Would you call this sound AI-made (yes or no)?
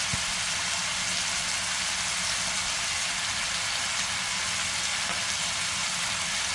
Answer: no